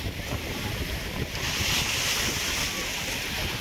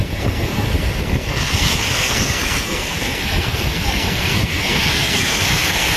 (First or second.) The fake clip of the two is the second